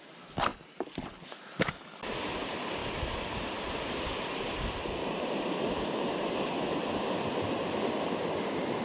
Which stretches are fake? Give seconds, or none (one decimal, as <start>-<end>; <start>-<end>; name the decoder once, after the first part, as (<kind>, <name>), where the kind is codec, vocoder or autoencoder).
0.5-1.2 (vocoder, BigVGAN v2); 2.8-6.6